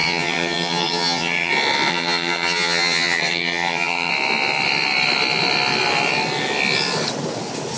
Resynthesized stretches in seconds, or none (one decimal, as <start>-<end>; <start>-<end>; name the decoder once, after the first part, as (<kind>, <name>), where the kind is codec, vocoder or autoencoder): 0.0-1.5 (vocoder, HiFi-GAN); 1.9-4.1